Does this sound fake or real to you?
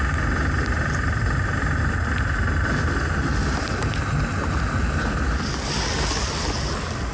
real